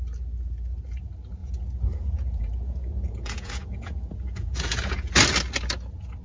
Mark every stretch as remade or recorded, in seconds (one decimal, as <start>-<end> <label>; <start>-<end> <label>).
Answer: 0.0-1.4 recorded; 1.4-5.1 remade; 5.1-6.2 recorded